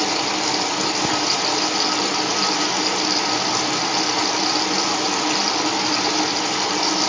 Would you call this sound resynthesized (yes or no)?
no